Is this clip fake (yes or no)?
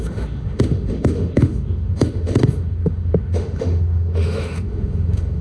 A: yes